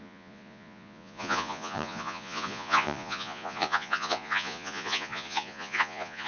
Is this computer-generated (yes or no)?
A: yes